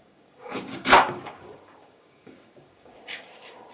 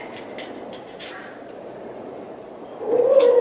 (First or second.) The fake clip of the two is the first